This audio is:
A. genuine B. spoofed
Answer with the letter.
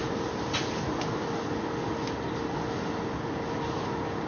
A